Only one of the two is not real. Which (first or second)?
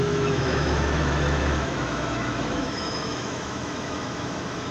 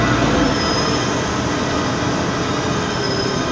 first